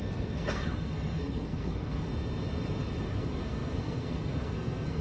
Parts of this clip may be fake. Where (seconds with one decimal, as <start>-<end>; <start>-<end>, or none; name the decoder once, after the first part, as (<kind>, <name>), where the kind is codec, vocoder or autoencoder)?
0.0-2.1 (codec, SNAC); 3.0-5.0